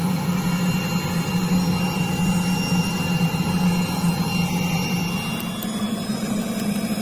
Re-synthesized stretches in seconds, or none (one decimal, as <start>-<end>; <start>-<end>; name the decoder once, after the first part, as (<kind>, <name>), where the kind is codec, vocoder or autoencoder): none